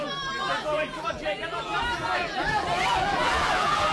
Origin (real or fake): fake